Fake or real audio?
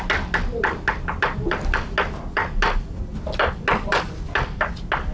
real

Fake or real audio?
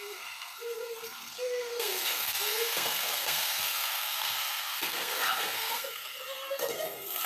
fake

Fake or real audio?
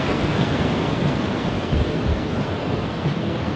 fake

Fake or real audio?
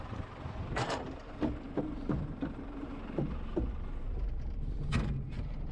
fake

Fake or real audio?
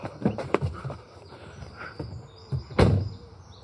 fake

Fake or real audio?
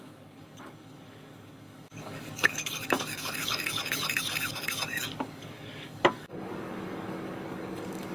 fake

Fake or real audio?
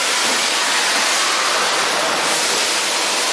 real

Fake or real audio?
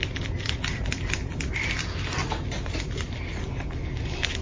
real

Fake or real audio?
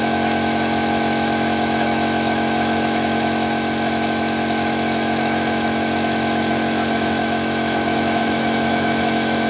fake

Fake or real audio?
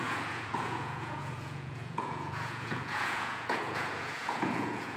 fake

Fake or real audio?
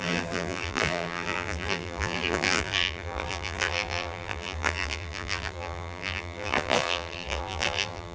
fake